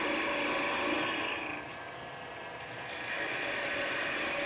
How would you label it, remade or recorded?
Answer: recorded